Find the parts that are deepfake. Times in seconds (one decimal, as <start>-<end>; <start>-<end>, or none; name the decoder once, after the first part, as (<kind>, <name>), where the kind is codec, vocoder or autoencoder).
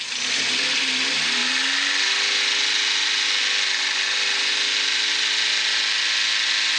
none